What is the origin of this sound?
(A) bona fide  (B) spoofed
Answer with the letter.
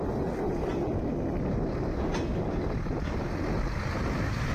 A